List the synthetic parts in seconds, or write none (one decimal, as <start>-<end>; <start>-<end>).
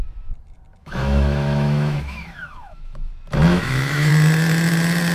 0.8-3.1; 3.5-4.1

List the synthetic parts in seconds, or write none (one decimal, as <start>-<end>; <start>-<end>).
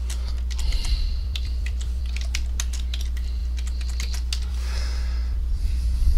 0.8-2.0; 5.2-5.7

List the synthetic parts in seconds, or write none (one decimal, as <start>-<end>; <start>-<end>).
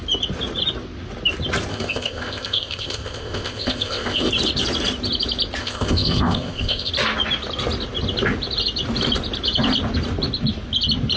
1.7-4.3; 5.6-6.9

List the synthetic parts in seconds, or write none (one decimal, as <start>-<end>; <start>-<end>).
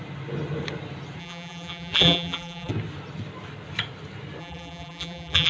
1.2-2.7; 4.4-5.5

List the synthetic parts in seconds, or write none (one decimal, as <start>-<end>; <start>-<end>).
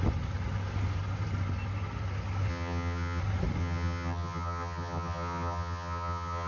2.5-3.2; 3.6-6.5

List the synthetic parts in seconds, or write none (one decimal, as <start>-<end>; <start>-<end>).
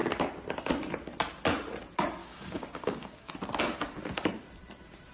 2.2-3.3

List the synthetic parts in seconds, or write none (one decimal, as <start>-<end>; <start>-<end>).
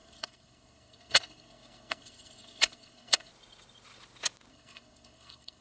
0.0-3.3; 4.5-5.6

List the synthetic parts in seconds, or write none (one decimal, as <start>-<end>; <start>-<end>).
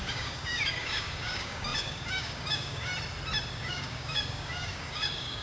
0.0-2.9; 3.5-5.4